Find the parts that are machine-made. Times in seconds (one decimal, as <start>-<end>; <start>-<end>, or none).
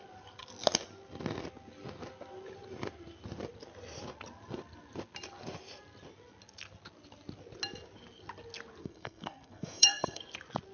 8.8-10.2